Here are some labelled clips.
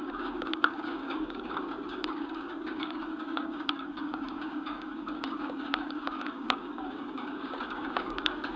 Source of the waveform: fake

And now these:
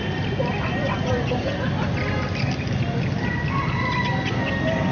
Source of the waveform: real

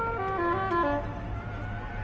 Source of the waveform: real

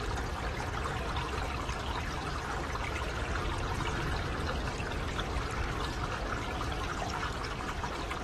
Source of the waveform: real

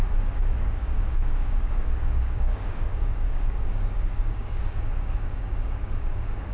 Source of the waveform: fake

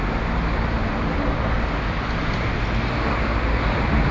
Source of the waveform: real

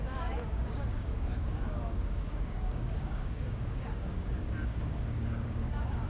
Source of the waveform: fake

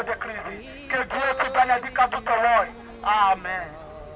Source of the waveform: real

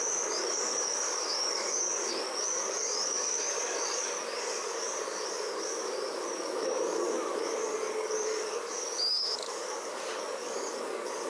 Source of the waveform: fake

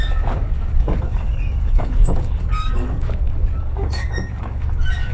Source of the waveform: fake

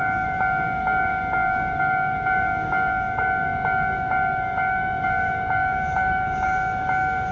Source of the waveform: fake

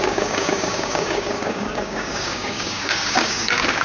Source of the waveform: fake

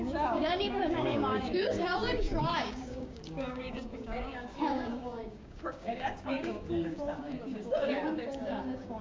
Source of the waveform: fake